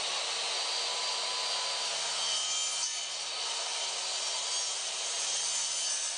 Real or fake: real